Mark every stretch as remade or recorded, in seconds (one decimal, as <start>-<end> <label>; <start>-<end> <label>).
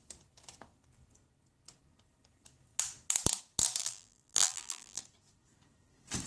0.0-3.8 recorded; 3.8-5.0 remade; 5.0-6.3 recorded